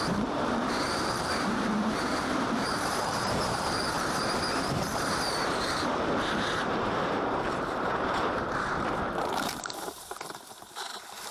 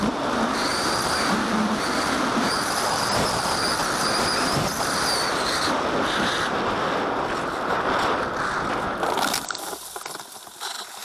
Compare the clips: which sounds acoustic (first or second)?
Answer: second